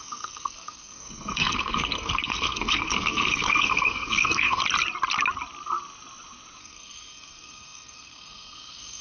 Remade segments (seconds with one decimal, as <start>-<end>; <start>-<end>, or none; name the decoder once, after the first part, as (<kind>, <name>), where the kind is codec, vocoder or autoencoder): 0.0-4.6 (codec, SNAC); 6.6-9.0